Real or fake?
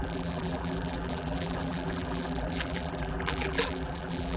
fake